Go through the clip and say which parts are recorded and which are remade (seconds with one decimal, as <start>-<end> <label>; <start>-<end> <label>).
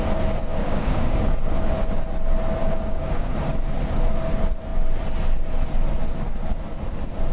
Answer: 0.0-0.6 recorded; 0.6-1.3 remade; 1.3-2.6 recorded; 2.6-3.3 remade; 3.3-7.3 recorded